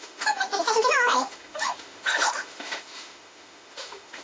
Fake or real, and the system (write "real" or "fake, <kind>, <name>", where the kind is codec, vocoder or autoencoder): fake, autoencoder, DAC-VAE